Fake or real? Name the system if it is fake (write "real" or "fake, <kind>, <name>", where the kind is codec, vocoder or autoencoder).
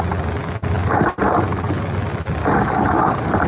real